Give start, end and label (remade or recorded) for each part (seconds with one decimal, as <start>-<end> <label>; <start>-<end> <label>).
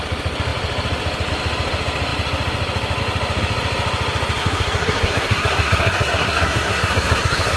0.0-4.4 recorded; 4.4-7.6 remade